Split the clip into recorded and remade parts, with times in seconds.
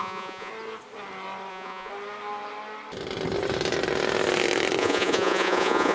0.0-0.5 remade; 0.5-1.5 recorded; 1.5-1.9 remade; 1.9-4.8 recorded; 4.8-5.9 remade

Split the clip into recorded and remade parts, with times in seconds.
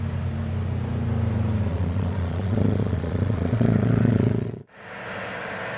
0.0-1.7 recorded; 1.7-4.8 remade; 4.8-5.8 recorded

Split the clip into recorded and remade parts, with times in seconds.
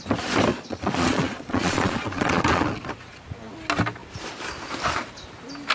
0.0-0.5 recorded; 0.5-2.9 remade; 2.9-5.7 recorded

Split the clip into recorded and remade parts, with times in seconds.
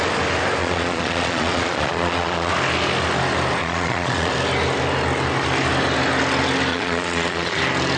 0.0-0.6 recorded; 0.6-2.5 remade; 2.5-3.6 recorded; 3.6-4.3 remade; 4.3-6.7 recorded; 6.7-7.6 remade; 7.6-8.0 recorded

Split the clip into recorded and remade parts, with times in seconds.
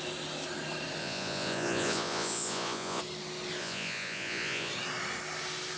0.0-1.0 recorded; 1.0-3.0 remade; 3.0-3.6 recorded; 3.6-4.7 remade; 4.7-5.8 recorded